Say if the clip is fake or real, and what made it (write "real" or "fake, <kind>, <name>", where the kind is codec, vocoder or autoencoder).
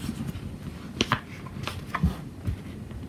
real